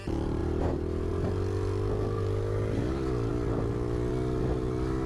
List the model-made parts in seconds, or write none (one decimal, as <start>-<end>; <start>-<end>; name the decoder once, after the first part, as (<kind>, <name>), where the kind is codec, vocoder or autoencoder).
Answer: none